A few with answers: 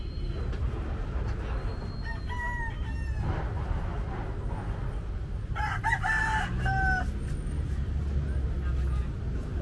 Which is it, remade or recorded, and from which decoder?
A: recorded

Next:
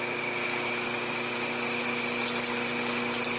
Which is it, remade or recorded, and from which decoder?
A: recorded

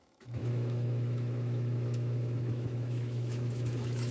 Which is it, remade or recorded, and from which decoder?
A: remade, autoencoder, DAC-VAE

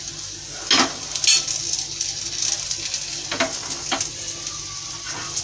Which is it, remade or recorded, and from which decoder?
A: recorded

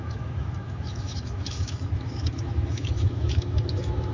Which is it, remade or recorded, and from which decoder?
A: remade, autoencoder, DAC-VAE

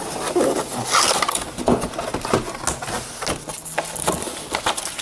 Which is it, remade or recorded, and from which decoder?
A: recorded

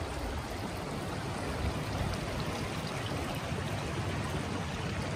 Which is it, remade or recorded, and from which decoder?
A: recorded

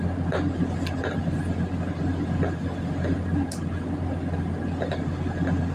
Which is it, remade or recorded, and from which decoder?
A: recorded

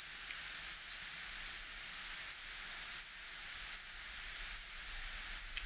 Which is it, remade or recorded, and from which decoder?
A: recorded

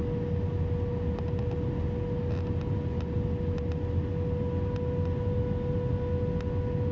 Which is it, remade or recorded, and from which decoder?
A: recorded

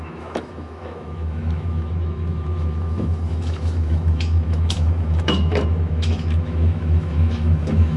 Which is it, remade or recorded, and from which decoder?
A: remade, autoencoder, DAC-VAE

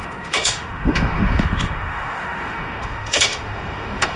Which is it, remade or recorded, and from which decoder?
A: remade, autoencoder, DAC-VAE